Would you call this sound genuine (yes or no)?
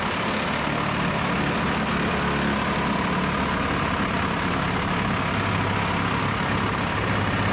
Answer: yes